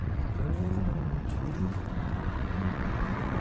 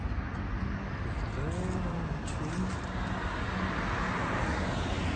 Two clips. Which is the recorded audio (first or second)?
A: second